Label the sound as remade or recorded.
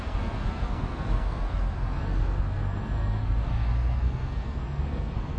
remade